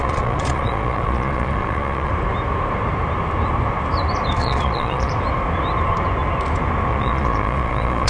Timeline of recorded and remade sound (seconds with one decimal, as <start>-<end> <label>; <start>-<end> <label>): 0.0-2.1 remade; 2.1-4.4 recorded; 4.4-5.1 remade; 5.1-6.9 recorded; 6.9-8.1 remade